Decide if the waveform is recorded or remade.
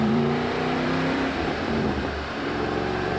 remade